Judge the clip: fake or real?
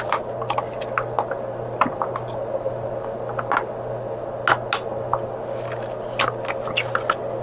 real